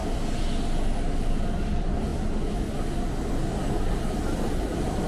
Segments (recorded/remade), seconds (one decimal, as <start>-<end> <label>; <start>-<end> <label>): 0.0-1.6 recorded; 1.6-2.1 remade; 2.1-3.3 recorded; 3.3-5.1 remade